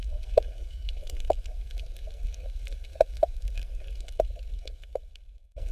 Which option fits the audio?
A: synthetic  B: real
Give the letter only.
A